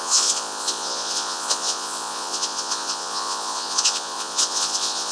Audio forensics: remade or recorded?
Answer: remade